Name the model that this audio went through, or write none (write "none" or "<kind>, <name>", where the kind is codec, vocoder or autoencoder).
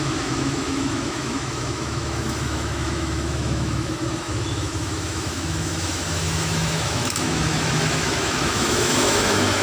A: autoencoder, DAC-VAE